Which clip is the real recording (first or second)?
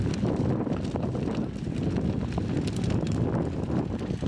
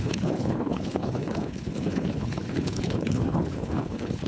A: first